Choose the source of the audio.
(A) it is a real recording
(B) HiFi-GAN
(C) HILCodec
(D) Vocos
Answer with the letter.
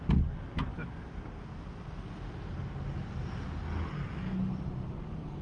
A